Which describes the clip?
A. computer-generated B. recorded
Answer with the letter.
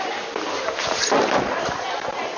B